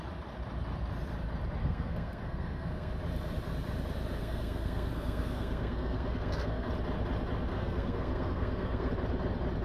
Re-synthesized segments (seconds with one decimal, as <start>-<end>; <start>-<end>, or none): 1.6-2.9; 4.2-6.7; 7.5-8.9